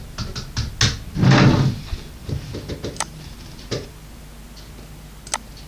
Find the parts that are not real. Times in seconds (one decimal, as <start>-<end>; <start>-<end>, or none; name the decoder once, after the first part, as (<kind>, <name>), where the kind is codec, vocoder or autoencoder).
2.2-3.9 (vocoder, BigVGAN v2)